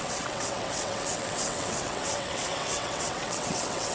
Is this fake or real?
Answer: fake